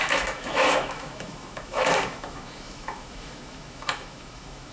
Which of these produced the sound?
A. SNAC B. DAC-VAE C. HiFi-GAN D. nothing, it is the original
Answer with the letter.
B